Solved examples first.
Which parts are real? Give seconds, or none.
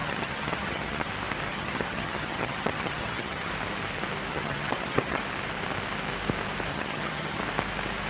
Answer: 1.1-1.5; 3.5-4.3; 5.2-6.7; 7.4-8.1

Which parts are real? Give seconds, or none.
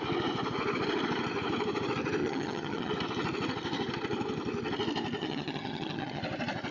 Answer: 0.0-2.2; 2.9-5.2; 6.2-6.7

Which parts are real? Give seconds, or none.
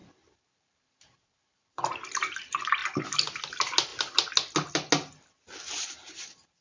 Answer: 2.4-6.6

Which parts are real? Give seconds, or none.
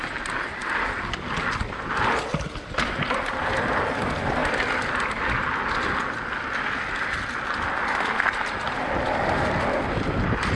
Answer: 0.0-10.5